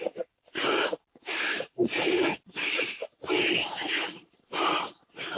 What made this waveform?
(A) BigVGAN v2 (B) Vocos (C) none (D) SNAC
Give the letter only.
C